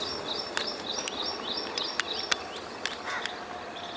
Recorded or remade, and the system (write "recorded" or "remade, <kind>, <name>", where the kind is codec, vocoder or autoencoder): recorded